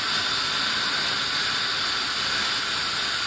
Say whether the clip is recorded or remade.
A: recorded